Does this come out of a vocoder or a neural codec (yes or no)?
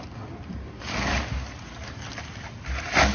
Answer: no